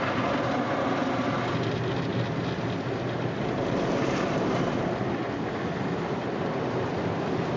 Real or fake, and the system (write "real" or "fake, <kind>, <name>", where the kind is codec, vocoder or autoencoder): real